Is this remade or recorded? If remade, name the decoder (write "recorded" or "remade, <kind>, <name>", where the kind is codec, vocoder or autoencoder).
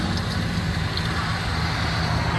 recorded